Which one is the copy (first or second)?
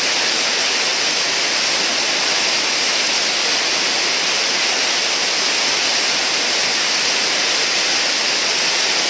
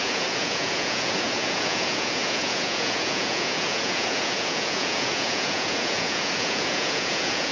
second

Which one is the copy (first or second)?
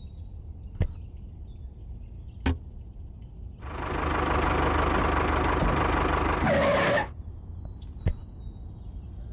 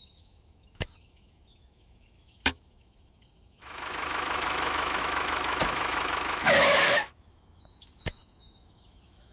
second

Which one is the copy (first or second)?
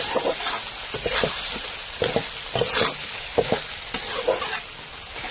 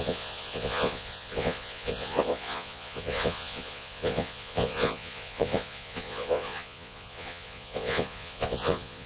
second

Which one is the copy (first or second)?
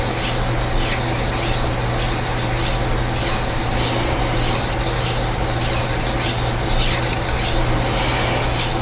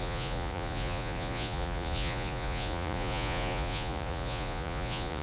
second